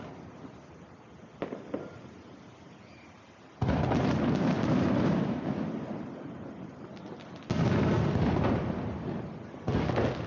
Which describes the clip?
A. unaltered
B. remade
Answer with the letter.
A